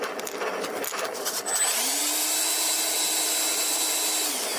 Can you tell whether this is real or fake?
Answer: real